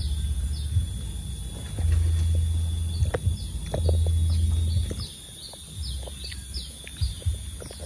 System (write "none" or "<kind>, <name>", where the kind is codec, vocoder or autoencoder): none